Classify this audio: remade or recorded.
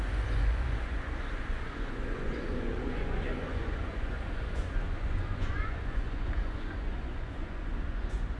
remade